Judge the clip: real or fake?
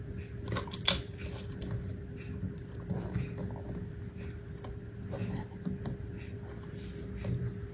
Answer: real